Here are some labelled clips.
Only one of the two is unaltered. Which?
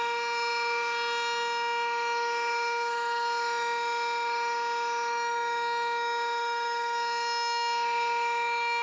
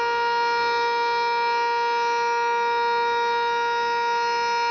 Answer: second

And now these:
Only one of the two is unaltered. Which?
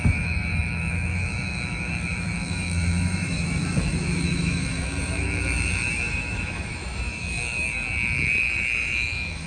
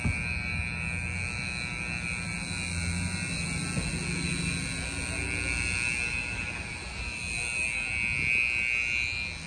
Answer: second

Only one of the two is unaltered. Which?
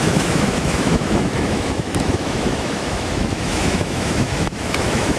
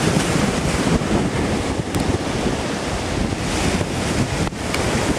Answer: second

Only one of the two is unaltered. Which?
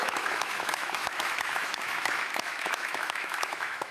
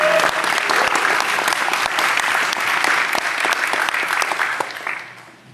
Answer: second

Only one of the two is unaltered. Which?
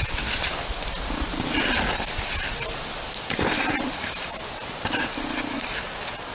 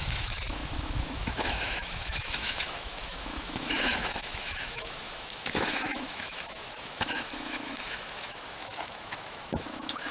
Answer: first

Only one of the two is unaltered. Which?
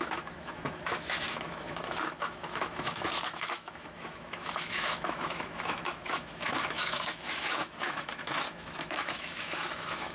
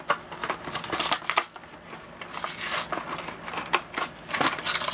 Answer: second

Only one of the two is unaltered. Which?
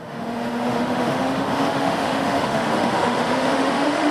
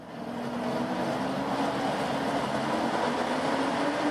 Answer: second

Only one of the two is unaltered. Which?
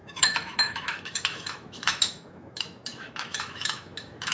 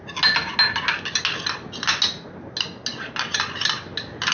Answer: second